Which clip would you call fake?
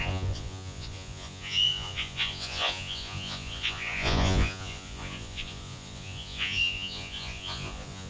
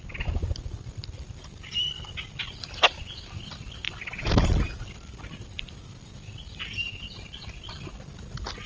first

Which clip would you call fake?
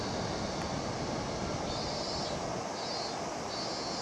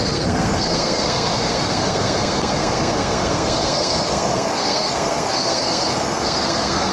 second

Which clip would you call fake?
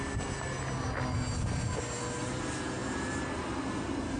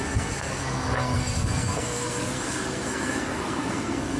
second